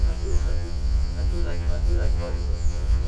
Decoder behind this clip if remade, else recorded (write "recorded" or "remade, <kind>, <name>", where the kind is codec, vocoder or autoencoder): remade, vocoder, Vocos